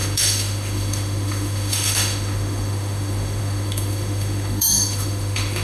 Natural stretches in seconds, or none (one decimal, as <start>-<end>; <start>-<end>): none